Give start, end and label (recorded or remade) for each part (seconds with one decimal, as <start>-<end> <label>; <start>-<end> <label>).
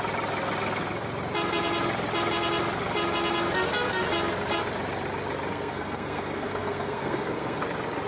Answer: 0.0-5.5 recorded; 5.5-7.6 remade; 7.6-8.1 recorded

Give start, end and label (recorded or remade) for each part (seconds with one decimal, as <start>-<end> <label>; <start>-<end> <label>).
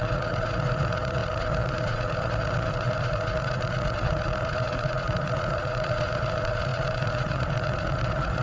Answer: 0.0-8.4 remade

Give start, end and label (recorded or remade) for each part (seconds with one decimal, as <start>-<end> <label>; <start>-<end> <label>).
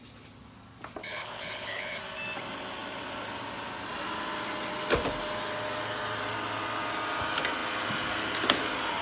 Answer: 0.0-1.0 recorded; 1.0-2.0 remade; 2.0-9.0 recorded